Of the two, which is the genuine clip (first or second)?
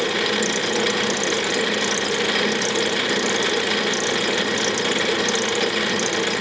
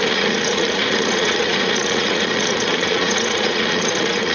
first